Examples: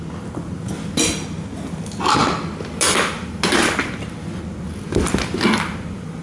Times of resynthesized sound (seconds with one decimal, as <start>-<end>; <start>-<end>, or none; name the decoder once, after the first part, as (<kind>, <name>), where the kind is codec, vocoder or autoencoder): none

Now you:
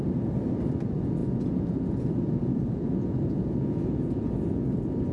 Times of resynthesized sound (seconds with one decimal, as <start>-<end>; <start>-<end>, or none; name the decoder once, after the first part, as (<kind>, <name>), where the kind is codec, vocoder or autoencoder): 1.2-4.3 (vocoder, Vocos)

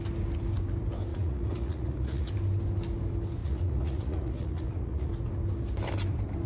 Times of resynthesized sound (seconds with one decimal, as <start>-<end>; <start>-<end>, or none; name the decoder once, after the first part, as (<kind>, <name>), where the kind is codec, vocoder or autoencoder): 1.1-2.3 (vocoder, Vocos); 3.4-5.1

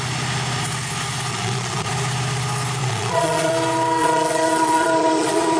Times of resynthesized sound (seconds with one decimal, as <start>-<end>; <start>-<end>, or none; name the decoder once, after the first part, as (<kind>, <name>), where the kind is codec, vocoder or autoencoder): 1.3-1.9 (vocoder, Vocos); 2.8-3.5; 4.0-5.6

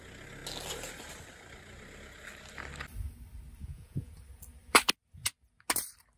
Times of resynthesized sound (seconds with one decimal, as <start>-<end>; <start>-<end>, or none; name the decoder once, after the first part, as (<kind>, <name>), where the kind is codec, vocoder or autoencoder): 3.6-4.1 (vocoder, Vocos)

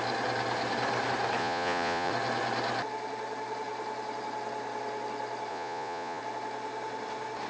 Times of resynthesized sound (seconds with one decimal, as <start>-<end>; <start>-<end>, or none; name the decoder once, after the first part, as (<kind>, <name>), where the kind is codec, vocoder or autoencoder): 1.4-2.1 (vocoder, Vocos); 5.5-6.2